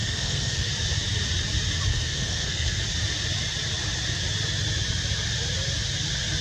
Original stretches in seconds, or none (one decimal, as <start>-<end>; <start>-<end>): 0.7-1.9; 2.8-6.4